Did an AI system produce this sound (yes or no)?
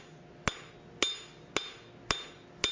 no